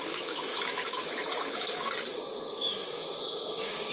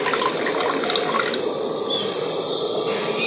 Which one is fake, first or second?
first